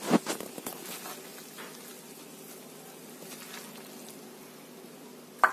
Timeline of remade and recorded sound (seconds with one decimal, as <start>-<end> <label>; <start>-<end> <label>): 0.0-5.5 recorded